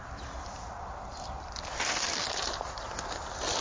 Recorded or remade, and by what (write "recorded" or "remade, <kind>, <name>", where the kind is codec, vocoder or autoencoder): recorded